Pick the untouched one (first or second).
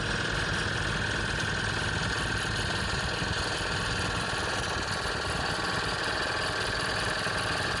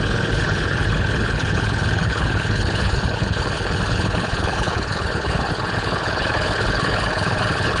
first